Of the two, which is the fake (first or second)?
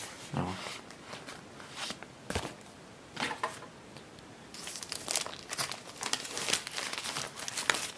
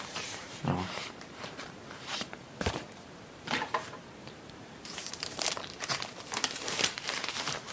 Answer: second